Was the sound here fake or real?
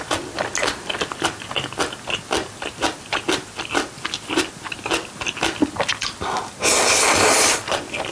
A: real